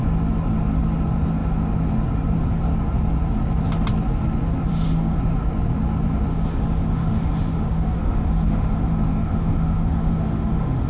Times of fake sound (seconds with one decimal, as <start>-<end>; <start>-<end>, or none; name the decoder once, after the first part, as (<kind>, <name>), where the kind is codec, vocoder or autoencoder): 4.7-5.2 (autoencoder, DAC-VAE); 6.3-10.9

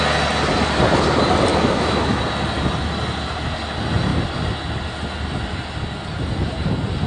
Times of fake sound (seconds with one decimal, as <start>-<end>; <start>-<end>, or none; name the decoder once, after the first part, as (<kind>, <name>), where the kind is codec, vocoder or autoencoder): 1.5-2.2 (autoencoder, DAC-VAE)

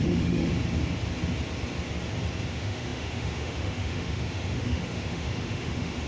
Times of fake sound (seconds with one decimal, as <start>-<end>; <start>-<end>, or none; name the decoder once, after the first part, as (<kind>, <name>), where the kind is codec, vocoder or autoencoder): 0.0-0.5 (autoencoder, DAC-VAE); 2.5-6.1

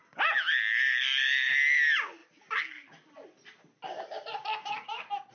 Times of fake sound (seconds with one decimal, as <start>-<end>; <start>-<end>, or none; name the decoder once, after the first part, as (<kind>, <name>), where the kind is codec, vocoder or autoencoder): none

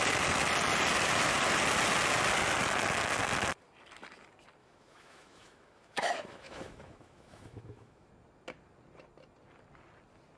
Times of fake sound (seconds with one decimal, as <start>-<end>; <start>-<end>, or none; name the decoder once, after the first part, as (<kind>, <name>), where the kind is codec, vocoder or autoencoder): 4.6-8.1 (autoencoder, DAC-VAE)